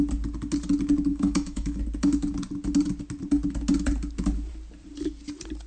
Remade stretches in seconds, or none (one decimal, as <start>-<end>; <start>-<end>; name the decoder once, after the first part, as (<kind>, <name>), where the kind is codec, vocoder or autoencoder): 1.1-1.8 (autoencoder, DAC-VAE)

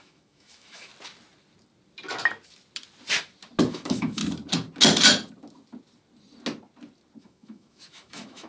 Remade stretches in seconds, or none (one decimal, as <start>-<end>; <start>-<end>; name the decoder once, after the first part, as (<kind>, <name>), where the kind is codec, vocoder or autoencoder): 0.0-0.9 (autoencoder, DAC-VAE); 3.7-4.2; 7.2-8.5